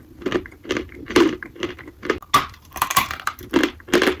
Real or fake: real